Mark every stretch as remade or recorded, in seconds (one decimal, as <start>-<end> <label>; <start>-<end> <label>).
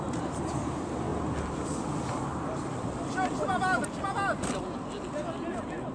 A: 0.0-5.9 recorded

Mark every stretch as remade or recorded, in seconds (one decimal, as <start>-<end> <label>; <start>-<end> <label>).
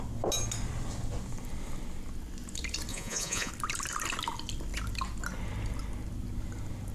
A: 0.0-2.9 recorded; 2.9-3.5 remade; 3.5-6.9 recorded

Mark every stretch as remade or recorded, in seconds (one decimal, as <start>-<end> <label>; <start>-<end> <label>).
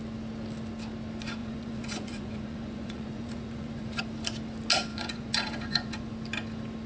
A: 0.0-1.4 recorded; 1.4-4.0 remade; 4.0-4.9 recorded; 4.9-6.1 remade; 6.1-6.9 recorded